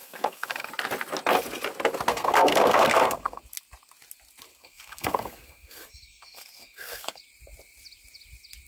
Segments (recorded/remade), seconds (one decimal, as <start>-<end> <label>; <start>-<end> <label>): 0.0-0.7 remade; 0.7-2.1 recorded; 2.1-3.4 remade; 3.4-4.5 recorded; 4.5-7.2 remade; 7.2-8.7 recorded